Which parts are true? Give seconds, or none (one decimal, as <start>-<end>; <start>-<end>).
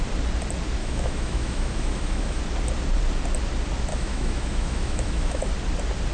0.0-0.8; 2.4-3.9; 5.5-6.1